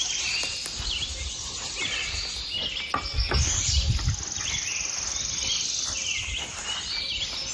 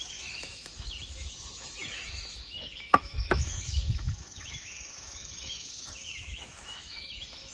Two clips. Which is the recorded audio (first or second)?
first